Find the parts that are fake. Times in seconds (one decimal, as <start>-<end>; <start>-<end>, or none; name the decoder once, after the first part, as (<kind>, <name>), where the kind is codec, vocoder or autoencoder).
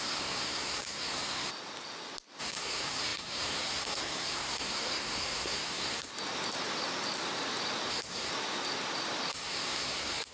0.0-1.5 (codec, SNAC); 2.4-6.1; 7.9-8.3; 9.3-10.3